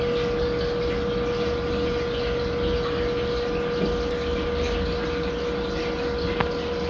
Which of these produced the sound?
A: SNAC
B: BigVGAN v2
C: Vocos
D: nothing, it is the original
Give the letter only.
D